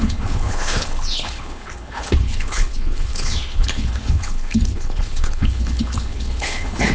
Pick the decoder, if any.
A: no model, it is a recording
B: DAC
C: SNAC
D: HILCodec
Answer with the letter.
D